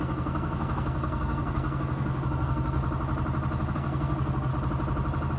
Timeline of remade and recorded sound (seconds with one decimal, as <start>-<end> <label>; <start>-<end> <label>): 0.0-2.8 remade; 2.8-3.7 recorded; 3.7-4.5 remade; 4.5-5.4 recorded